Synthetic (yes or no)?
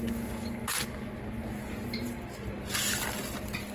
no